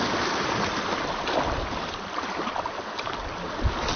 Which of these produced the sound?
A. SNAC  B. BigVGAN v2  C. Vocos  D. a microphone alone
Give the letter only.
D